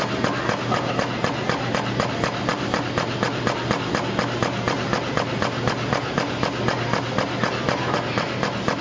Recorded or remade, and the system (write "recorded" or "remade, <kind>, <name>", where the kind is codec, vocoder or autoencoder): recorded